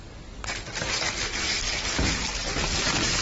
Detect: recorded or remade recorded